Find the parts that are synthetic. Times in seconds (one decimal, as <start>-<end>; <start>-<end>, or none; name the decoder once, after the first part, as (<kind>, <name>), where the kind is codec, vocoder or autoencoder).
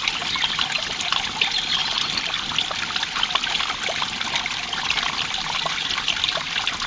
none